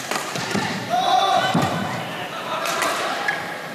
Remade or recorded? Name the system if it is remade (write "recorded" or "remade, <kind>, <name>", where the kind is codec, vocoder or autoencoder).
remade, vocoder, BigVGAN v2